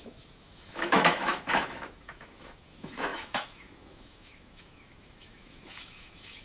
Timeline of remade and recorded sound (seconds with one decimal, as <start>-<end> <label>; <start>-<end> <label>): 0.0-6.4 remade